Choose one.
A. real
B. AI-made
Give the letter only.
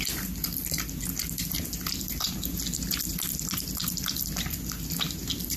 B